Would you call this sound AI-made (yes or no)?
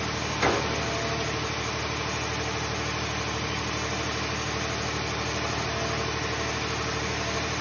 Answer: no